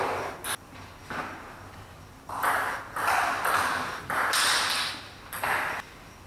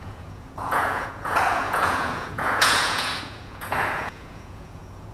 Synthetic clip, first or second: second